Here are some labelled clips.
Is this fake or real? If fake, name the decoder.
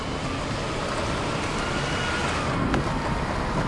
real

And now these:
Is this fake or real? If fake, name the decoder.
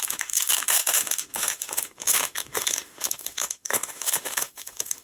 fake, autoencoder, DAC-VAE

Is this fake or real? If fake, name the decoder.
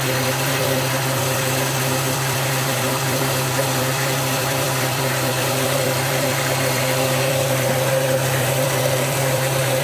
fake, vocoder, BigVGAN v2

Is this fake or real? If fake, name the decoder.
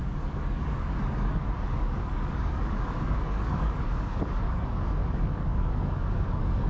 fake, codec, DAC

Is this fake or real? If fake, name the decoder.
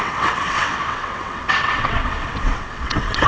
fake, vocoder, WaveNeXt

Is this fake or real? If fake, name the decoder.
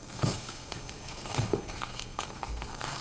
fake, codec, SNAC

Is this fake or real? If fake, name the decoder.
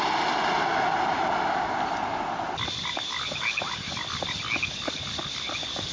real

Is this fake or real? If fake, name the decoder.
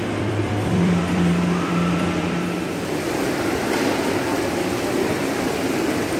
fake, vocoder, BigVGAN v2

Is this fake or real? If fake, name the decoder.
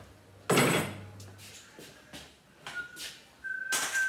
real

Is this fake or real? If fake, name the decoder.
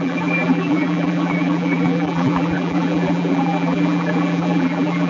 fake, vocoder, BigVGAN v2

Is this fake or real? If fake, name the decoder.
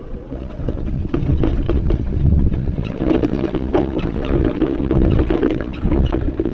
fake, vocoder, WaveNeXt